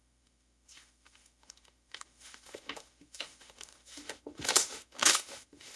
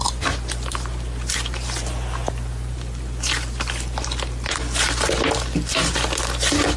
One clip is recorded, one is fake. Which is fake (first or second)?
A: first